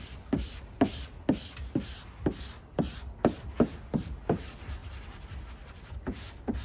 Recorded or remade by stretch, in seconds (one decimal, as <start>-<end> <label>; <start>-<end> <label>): 0.0-6.6 recorded